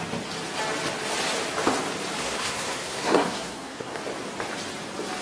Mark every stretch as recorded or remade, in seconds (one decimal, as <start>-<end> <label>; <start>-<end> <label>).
0.0-2.2 recorded; 2.2-4.0 remade; 4.0-5.2 recorded